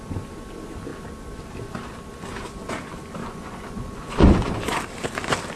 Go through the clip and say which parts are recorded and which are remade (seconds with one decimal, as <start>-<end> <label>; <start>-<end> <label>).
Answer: 0.0-3.2 recorded; 3.2-4.8 remade; 4.8-5.6 recorded